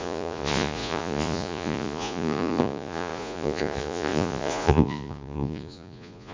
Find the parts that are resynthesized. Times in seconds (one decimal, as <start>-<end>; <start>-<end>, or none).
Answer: 0.0-6.3